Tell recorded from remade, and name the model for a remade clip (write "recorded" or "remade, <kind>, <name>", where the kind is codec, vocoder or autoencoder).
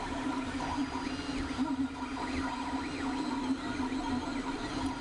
recorded